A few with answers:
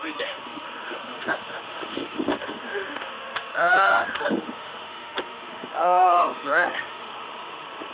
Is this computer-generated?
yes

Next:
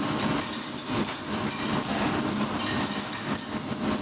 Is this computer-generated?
no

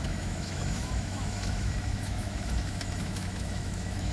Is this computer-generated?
yes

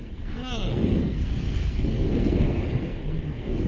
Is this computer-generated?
yes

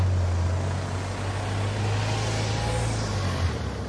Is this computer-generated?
no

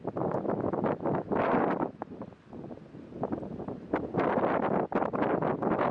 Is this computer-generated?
no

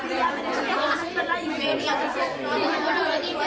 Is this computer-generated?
yes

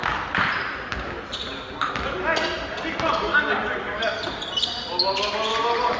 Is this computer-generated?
no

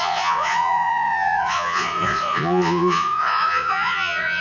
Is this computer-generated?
yes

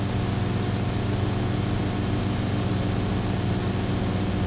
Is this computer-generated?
no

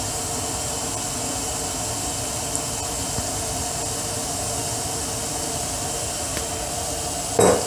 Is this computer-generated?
no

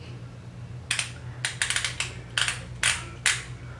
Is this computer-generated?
no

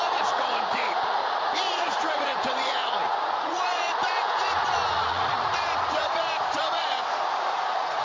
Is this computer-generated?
yes